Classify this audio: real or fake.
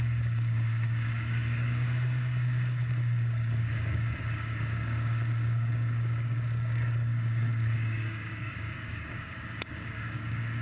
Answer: fake